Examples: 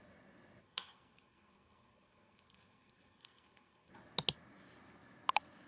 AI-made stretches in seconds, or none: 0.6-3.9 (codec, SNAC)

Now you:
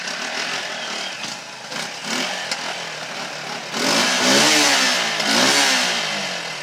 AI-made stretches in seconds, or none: none

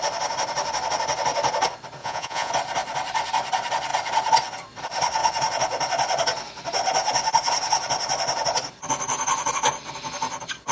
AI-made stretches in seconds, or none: 2.0-2.5 (vocoder, Vocos)

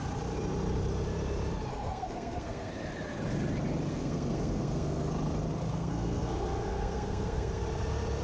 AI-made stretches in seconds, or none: 1.7-2.7 (codec, SNAC); 3.9-5.1; 5.7-7.6

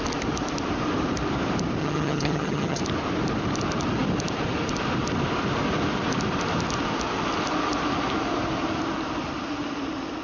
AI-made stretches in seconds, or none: 1.8-2.8 (vocoder, HiFi-GAN)

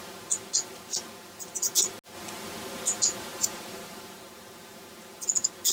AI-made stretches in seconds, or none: 3.3-5.2 (vocoder, BigVGAN v2)